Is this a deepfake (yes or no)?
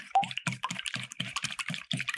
yes